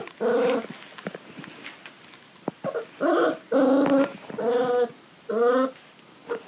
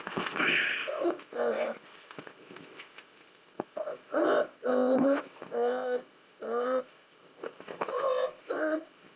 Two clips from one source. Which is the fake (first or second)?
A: second